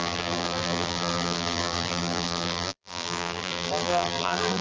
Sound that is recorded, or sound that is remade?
remade